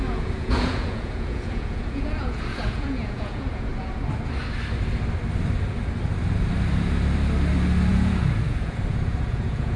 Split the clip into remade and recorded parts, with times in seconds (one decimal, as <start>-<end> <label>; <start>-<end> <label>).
0.0-3.7 remade; 3.7-7.9 recorded; 7.9-9.8 remade